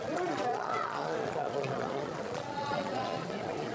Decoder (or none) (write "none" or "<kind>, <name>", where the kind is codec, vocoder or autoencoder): vocoder, Vocos